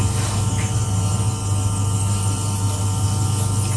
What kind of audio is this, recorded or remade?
recorded